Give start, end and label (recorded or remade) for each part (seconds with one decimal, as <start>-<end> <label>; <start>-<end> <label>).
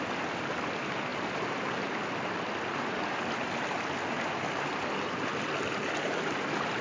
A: 0.0-6.8 recorded